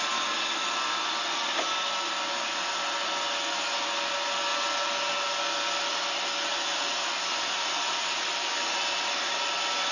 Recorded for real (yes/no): yes